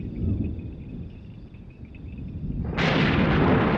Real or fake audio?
real